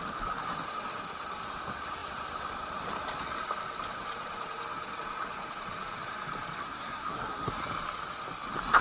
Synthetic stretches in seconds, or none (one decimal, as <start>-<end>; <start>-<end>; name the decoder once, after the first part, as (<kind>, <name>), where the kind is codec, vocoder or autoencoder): 6.6-7.5 (codec, SNAC)